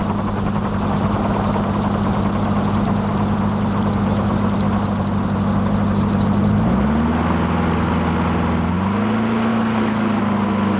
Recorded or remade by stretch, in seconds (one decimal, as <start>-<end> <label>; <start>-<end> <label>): 0.0-9.5 recorded; 9.5-10.2 remade; 10.2-10.8 recorded